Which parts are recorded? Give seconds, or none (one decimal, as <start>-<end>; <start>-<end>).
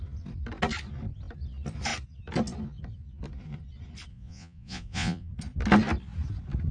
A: 0.0-4.1; 5.3-6.7